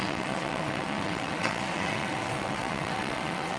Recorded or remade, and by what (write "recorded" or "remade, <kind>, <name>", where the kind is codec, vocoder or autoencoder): remade, vocoder, WaveNeXt